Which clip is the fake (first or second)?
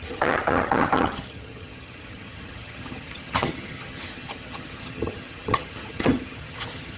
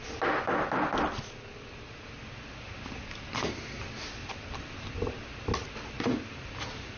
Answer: first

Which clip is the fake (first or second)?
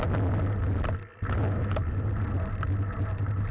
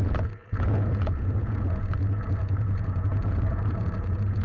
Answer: second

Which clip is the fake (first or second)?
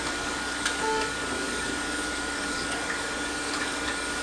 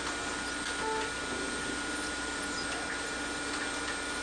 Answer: first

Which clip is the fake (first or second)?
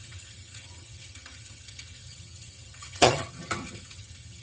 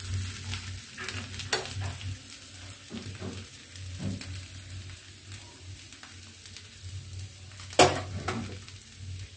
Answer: first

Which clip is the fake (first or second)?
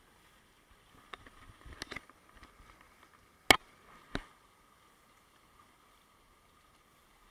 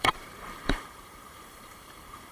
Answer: second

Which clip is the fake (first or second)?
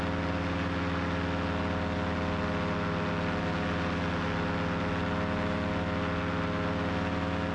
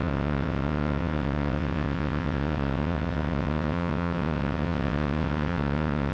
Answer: second